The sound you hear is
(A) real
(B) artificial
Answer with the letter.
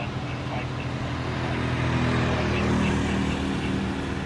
A